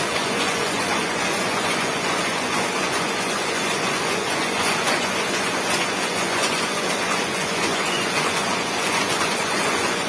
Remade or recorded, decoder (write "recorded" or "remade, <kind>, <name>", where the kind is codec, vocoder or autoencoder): remade, vocoder, Vocos